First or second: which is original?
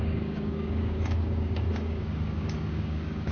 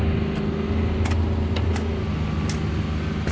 second